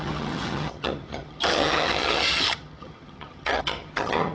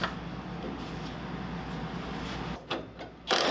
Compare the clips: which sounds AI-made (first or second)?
first